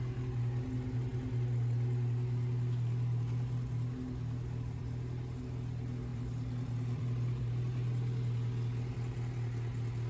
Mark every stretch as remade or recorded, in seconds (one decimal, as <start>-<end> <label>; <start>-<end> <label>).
0.0-6.1 recorded; 6.1-7.4 remade; 7.4-10.1 recorded